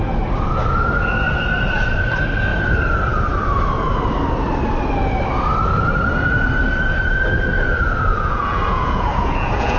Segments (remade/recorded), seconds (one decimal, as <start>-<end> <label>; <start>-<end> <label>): 0.0-8.1 recorded; 8.1-9.8 remade